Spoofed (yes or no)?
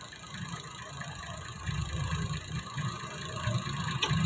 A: yes